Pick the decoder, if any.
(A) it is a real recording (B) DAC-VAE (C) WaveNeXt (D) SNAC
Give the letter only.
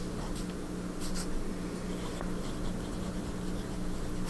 A